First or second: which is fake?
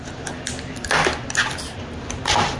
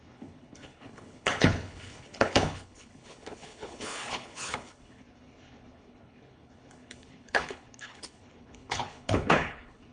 second